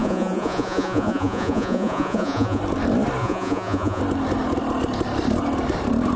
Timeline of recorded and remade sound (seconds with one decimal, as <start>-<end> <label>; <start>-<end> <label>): 0.0-2.6 remade; 2.6-3.2 recorded; 3.2-4.0 remade; 4.0-6.2 recorded